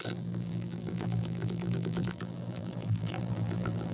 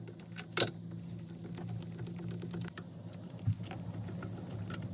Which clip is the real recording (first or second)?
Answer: second